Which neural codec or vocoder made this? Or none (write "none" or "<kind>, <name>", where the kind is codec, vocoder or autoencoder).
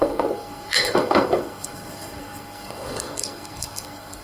codec, SNAC